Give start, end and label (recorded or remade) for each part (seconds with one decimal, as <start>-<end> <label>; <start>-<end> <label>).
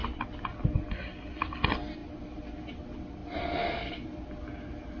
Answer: 0.0-5.0 recorded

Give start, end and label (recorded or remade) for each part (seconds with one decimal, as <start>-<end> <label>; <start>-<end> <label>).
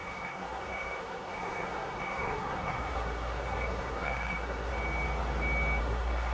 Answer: 0.0-4.7 remade; 4.7-5.8 recorded; 5.8-6.3 remade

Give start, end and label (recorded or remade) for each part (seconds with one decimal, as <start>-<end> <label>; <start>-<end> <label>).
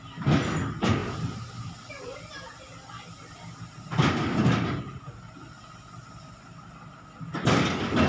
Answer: 0.0-8.1 recorded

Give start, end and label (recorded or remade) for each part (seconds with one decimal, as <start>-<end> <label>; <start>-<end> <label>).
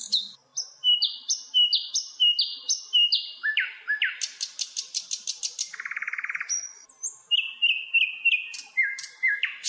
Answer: 0.0-9.7 recorded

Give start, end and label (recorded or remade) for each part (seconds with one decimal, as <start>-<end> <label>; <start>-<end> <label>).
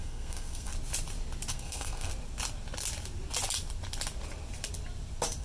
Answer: 0.0-0.7 remade; 0.7-1.5 recorded; 1.5-2.1 remade; 2.1-5.4 recorded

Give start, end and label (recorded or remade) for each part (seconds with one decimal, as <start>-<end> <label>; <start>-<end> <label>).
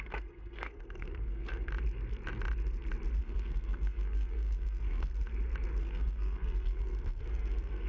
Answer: 0.0-1.7 remade; 1.7-3.2 recorded; 3.2-5.1 remade; 5.1-5.8 recorded; 5.8-7.9 remade